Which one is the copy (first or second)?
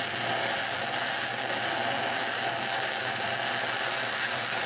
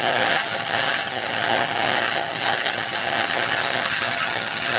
second